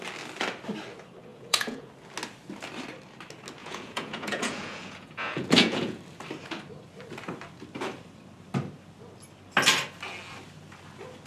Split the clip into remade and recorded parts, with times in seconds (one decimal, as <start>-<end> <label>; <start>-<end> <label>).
0.0-1.3 recorded; 1.3-1.9 remade; 1.9-3.6 recorded; 3.6-6.0 remade; 6.0-11.3 recorded